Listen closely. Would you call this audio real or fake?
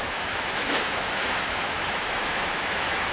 fake